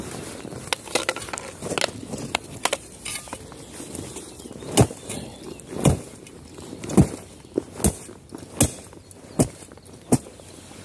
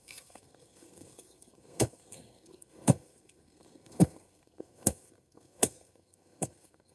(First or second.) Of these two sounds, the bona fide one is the first